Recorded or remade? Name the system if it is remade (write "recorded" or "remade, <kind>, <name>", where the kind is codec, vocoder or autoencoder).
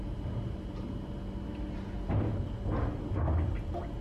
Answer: recorded